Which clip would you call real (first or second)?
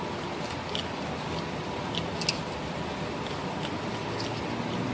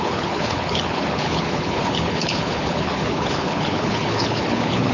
first